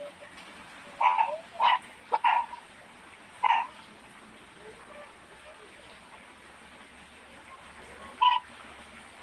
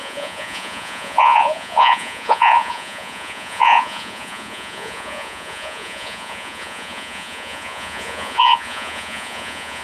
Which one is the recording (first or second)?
first